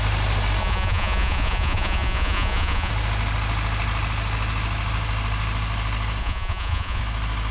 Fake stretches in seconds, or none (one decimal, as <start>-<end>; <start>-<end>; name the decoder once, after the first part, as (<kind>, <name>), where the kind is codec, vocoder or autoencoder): 0.6-2.9 (vocoder, Vocos); 6.2-7.0